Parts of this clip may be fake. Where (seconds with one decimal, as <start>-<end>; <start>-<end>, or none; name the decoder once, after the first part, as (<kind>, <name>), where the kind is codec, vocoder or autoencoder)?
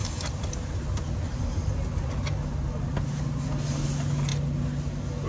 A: none